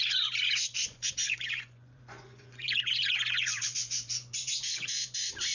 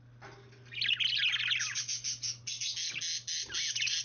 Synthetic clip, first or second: first